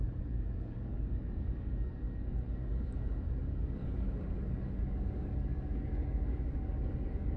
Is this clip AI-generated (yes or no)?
yes